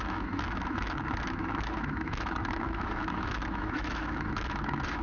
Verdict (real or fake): fake